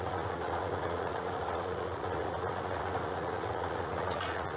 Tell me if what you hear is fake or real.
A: fake